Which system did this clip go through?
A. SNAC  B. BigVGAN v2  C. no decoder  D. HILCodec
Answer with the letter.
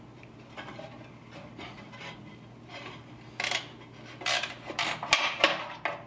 C